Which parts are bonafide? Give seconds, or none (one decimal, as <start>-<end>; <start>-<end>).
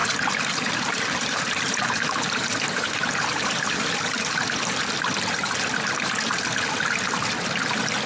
4.9-8.1